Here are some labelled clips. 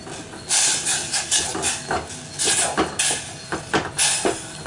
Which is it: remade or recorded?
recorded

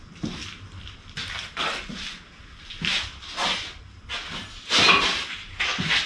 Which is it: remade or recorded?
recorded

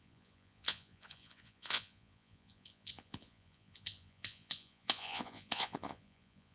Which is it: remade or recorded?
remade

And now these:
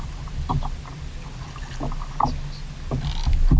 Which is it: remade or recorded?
recorded